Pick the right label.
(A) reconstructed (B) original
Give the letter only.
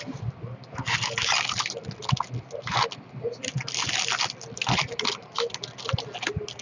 B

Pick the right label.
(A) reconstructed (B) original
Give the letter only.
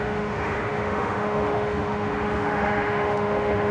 A